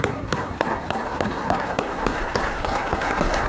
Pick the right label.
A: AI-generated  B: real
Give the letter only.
A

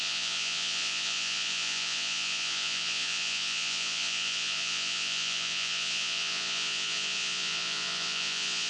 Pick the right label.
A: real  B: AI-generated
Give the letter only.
B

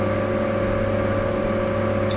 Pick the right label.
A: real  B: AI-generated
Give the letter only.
A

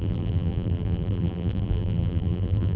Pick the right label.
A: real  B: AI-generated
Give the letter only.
B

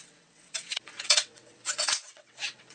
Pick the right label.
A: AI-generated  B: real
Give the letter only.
A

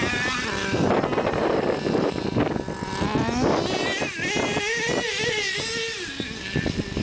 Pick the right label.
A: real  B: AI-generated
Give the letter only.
A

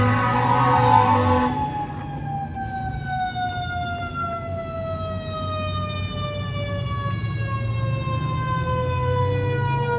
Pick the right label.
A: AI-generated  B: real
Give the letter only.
B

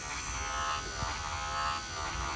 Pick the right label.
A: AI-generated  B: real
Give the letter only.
B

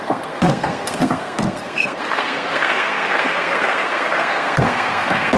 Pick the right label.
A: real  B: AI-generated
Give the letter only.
B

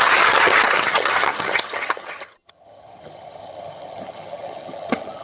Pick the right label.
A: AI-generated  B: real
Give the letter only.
A